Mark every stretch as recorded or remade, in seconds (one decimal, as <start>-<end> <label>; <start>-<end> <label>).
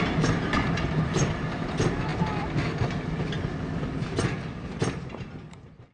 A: 0.0-2.1 remade; 2.1-5.5 recorded; 5.5-5.9 remade